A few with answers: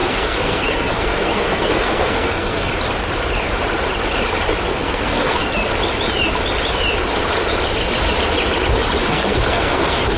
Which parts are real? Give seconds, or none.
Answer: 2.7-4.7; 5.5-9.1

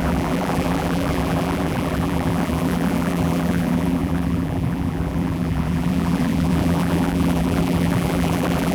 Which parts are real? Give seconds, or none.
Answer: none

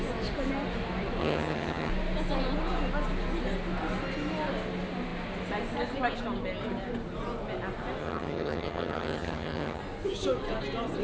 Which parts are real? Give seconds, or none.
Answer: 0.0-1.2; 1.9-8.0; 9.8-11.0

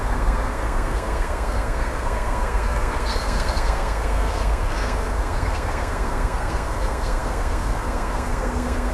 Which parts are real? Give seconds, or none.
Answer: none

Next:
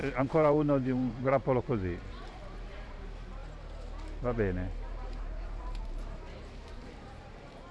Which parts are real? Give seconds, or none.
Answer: 3.4-5.2